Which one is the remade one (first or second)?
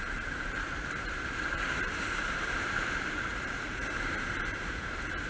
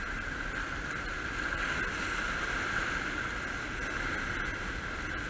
first